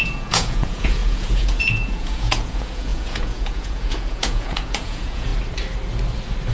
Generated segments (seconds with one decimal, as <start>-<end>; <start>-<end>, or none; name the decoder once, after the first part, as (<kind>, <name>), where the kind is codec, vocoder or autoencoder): 0.0-5.3 (vocoder, Vocos)